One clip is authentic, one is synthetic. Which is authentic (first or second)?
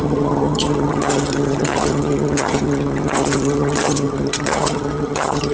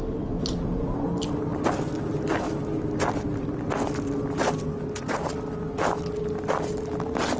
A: second